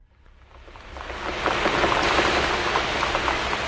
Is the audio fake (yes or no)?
no